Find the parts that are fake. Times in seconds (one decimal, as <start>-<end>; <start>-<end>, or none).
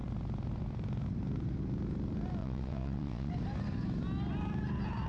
2.4-3.3